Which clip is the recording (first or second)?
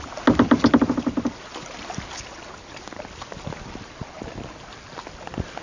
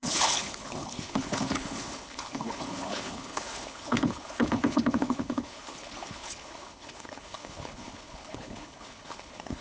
first